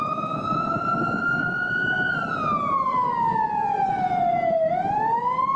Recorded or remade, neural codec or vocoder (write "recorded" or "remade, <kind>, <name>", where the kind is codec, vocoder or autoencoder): recorded